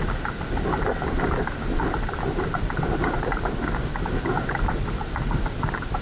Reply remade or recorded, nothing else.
recorded